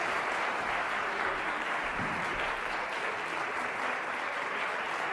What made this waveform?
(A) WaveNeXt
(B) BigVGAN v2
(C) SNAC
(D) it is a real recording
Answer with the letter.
B